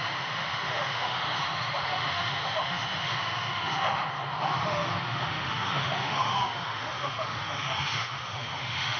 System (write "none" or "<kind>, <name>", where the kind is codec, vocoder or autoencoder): autoencoder, DAC-VAE